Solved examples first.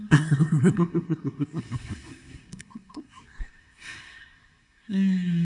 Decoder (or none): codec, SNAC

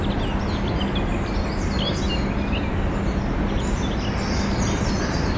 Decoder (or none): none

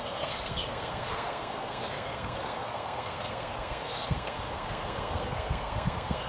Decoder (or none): codec, SNAC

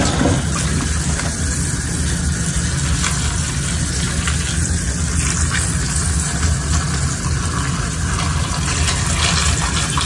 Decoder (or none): none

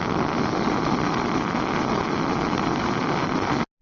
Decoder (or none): none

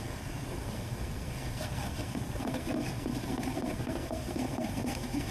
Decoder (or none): codec, SNAC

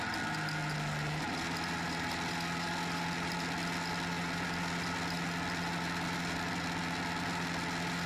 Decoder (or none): none